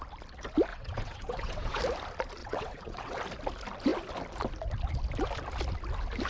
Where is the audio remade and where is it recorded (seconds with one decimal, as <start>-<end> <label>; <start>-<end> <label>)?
0.0-0.7 recorded; 0.7-1.8 remade; 1.8-2.4 recorded; 2.4-3.2 remade; 3.2-6.3 recorded